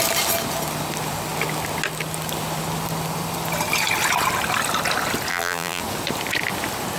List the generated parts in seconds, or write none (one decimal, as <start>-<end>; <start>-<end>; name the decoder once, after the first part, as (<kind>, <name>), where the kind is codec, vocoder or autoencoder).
5.3-5.8 (vocoder, BigVGAN v2)

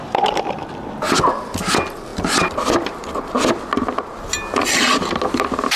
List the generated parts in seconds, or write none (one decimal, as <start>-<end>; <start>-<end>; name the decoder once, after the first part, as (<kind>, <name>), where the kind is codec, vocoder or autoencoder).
none